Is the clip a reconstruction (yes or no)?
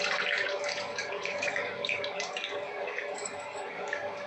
yes